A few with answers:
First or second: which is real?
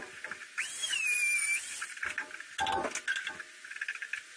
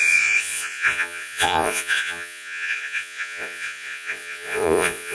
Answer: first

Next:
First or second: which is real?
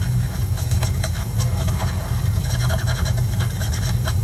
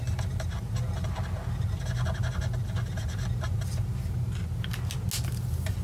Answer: second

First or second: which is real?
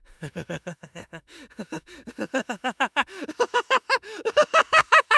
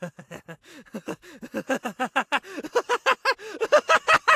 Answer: second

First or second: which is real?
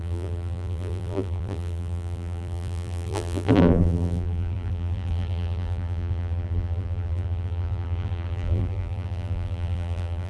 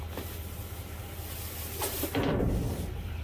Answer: second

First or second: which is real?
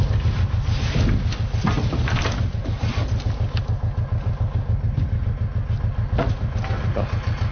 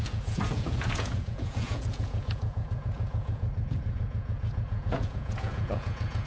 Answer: first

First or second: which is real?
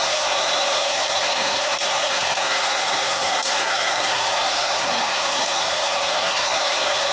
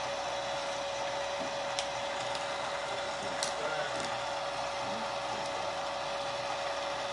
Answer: second